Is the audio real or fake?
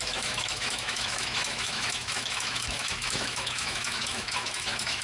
fake